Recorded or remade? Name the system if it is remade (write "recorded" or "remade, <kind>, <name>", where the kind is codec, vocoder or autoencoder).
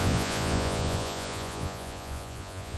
remade, vocoder, Vocos